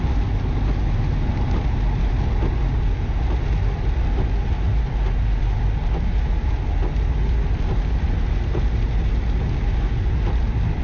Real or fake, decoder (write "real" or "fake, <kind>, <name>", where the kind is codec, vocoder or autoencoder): real